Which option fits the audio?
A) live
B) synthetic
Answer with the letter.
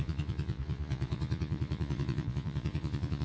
B